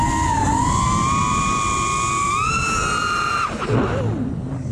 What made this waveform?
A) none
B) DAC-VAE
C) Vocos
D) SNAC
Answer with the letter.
A